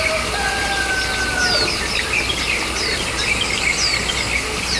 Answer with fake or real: real